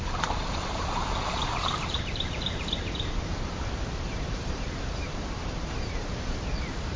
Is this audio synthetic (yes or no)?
yes